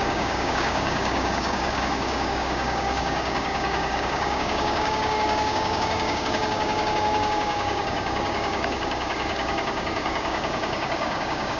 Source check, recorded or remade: remade